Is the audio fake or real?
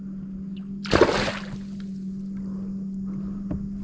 real